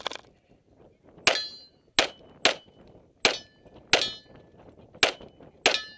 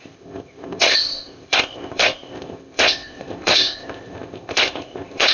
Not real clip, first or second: second